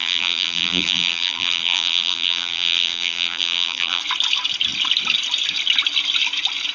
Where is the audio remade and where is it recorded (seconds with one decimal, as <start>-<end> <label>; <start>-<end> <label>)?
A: 0.0-4.0 remade; 4.0-6.7 recorded